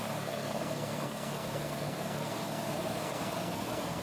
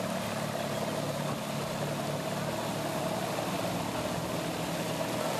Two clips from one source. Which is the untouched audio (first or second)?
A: second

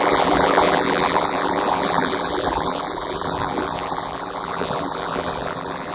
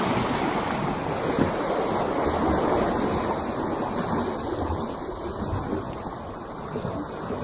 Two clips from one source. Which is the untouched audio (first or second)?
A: second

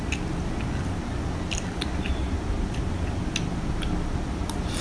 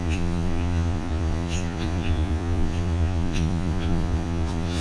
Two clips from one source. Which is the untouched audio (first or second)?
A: first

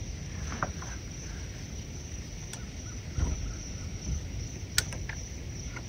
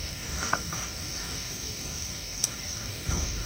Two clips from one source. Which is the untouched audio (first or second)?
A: first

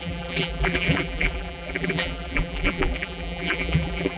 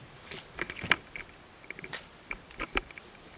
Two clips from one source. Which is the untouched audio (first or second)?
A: second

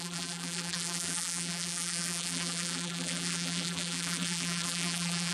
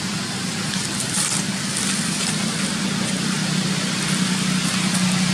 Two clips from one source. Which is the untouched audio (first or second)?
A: second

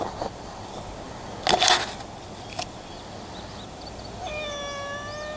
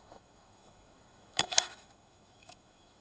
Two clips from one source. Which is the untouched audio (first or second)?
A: first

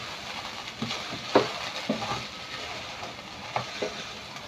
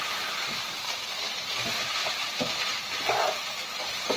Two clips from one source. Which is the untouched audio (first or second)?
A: first